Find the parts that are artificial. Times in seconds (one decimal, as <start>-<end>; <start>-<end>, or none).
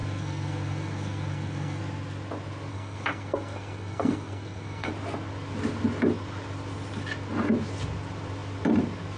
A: 0.0-1.8; 2.7-4.9